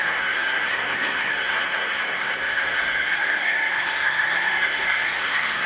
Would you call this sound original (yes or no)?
no